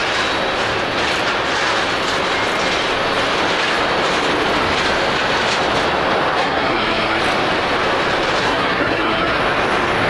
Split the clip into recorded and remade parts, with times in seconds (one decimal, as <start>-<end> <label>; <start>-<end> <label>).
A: 0.0-6.4 recorded; 6.4-7.2 remade; 7.2-8.4 recorded; 8.4-9.4 remade; 9.4-10.1 recorded